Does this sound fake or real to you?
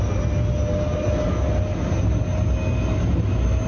real